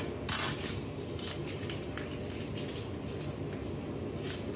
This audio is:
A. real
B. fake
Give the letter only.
A